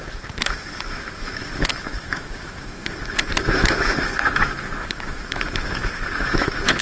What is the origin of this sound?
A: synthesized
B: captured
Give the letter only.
A